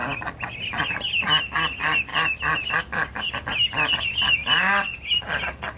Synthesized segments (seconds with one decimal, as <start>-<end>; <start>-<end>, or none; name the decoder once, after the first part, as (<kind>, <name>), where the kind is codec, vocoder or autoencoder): none